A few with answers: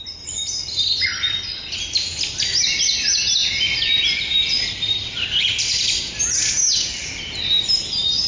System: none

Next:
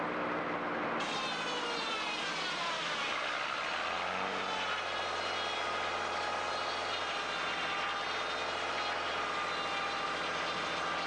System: none